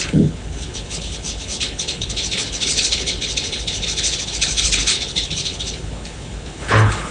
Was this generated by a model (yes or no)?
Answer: yes